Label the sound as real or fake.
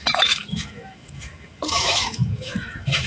fake